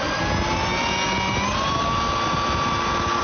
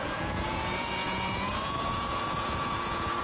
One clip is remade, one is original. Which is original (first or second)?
first